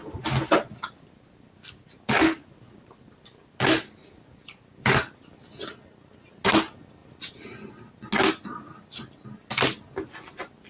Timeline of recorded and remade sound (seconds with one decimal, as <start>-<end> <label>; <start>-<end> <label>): 0.0-10.7 recorded